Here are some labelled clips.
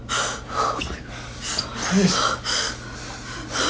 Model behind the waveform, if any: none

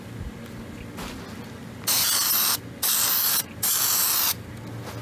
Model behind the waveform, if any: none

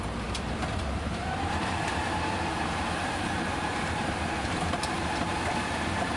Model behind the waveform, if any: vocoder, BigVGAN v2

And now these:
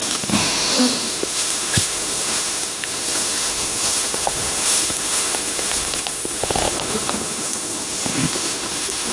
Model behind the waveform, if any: autoencoder, DAC-VAE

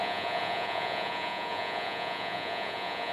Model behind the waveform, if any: vocoder, Vocos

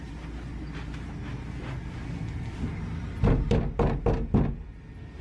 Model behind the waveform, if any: none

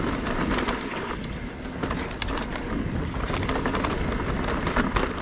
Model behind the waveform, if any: none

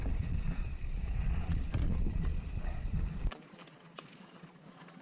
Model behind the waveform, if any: vocoder, Vocos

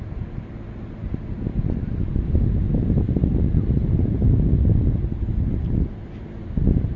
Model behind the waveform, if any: none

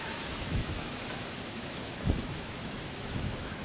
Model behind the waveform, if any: autoencoder, DAC-VAE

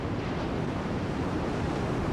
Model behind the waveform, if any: vocoder, BigVGAN v2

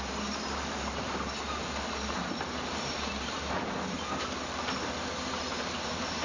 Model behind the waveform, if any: vocoder, BigVGAN v2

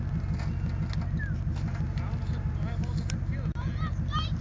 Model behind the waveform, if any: none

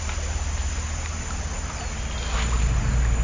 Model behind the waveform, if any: none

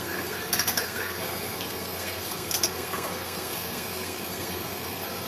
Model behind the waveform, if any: codec, SNAC